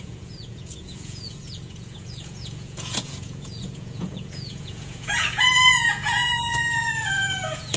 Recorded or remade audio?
remade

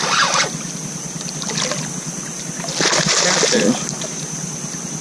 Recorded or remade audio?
recorded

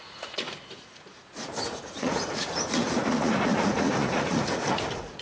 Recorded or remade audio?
remade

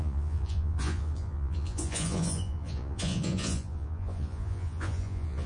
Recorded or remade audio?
remade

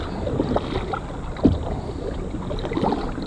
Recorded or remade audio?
recorded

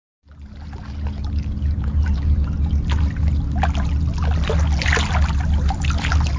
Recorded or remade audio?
recorded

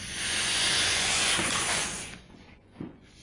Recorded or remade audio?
remade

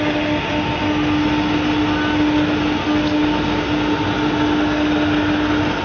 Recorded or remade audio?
recorded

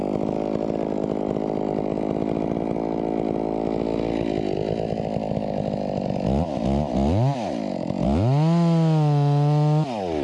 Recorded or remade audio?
recorded